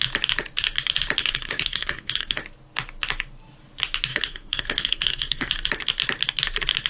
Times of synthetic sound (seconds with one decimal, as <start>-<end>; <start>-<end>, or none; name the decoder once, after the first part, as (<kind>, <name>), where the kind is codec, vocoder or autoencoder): 1.2-2.4 (codec, SNAC); 4.1-5.5